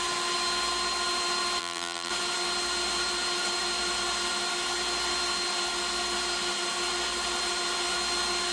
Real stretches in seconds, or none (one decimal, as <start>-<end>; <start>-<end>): 0.0-1.6; 2.1-8.5